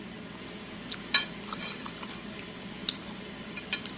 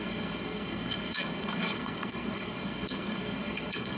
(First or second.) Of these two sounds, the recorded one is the first